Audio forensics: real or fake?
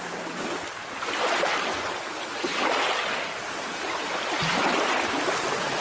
real